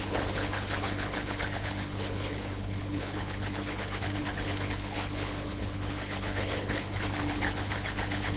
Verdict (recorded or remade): remade